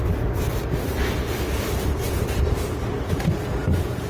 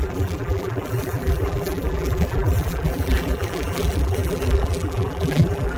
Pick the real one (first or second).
first